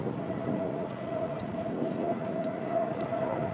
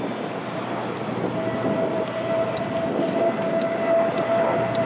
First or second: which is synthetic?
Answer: first